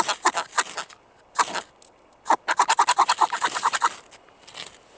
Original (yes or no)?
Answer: yes